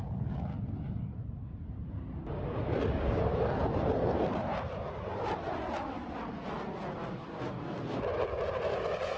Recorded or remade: remade